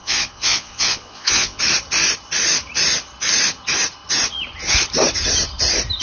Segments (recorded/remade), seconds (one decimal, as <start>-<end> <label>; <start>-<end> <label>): 0.0-1.6 remade; 1.6-6.0 recorded